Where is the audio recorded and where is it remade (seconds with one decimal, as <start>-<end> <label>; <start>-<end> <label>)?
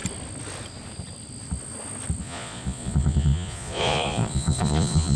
0.0-2.2 recorded; 2.2-5.2 remade